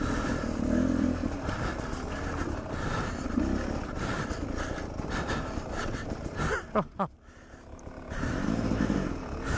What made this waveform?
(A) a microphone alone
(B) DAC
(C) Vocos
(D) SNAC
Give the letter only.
A